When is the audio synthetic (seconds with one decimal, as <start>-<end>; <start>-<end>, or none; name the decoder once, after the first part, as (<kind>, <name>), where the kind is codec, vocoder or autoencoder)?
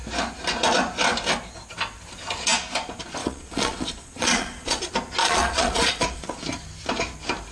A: 3.2-4.8 (vocoder, Vocos); 5.2-6.4